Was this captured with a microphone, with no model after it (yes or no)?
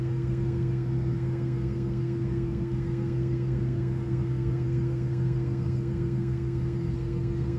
no